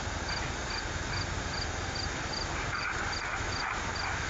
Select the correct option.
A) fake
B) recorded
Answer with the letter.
B